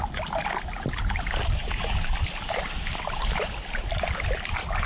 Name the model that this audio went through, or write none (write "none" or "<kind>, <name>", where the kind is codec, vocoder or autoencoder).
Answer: none